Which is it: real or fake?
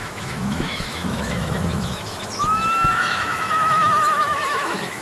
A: fake